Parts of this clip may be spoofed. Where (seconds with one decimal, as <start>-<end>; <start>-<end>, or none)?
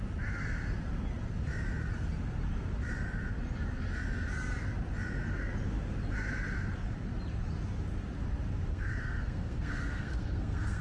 8.7-10.8